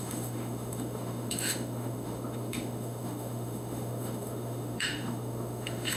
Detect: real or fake fake